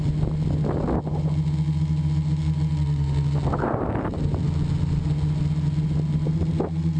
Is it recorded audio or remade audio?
recorded